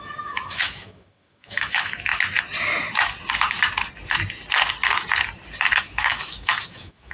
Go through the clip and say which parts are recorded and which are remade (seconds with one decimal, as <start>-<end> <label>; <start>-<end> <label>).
0.0-2.1 remade; 2.1-5.8 recorded; 5.8-7.1 remade